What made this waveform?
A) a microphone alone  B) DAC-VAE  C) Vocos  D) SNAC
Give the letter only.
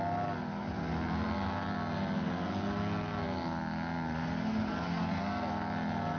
A